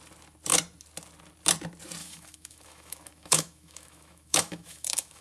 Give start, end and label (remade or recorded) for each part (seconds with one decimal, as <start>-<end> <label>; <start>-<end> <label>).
0.0-2.0 recorded; 2.0-5.2 remade